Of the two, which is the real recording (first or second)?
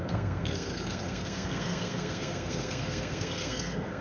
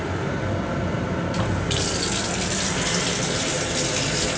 second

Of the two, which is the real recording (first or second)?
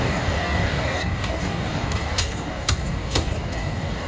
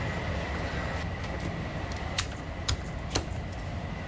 second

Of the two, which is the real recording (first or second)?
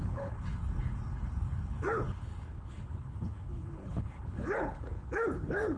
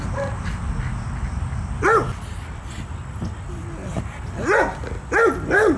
second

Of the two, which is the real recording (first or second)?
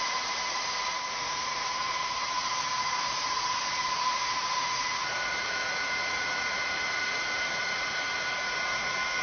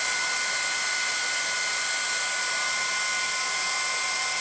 second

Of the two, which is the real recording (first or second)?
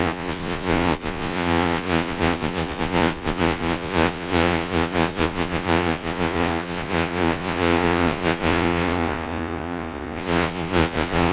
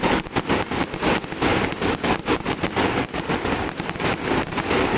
second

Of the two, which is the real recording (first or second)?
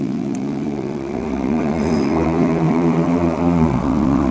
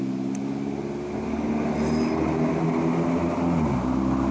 second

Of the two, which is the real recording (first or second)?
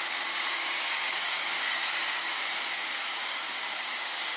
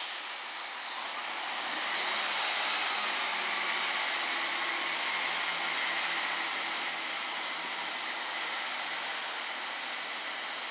second